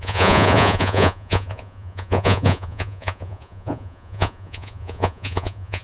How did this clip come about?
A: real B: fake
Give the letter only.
B